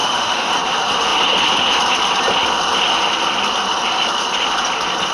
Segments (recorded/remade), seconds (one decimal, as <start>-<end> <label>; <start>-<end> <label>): 0.0-0.5 remade; 0.5-5.1 recorded